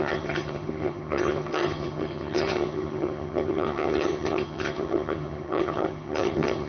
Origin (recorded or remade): remade